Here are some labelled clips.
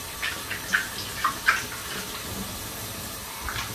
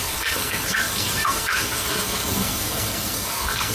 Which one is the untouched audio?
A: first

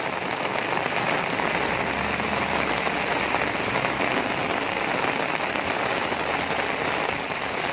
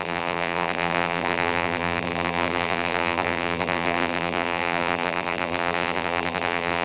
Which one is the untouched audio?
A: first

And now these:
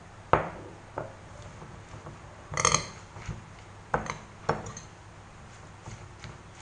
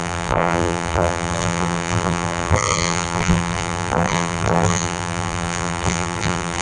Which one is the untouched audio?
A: first